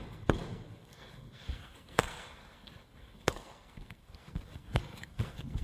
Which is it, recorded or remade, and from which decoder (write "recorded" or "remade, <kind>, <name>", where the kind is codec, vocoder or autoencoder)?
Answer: remade, codec, SNAC